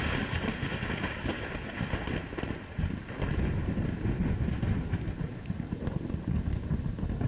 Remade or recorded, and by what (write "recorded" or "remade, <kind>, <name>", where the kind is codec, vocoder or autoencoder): recorded